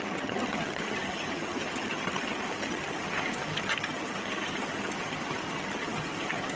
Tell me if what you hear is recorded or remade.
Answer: remade